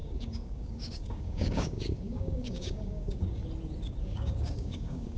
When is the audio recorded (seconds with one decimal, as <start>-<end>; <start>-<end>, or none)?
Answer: 3.4-4.0